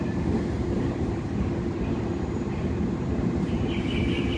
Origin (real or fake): fake